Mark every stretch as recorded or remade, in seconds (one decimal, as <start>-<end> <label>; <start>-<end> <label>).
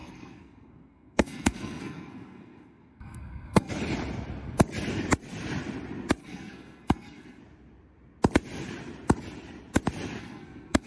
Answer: 0.0-3.7 remade; 3.7-6.2 recorded; 6.2-7.4 remade; 7.4-10.2 recorded; 10.2-10.9 remade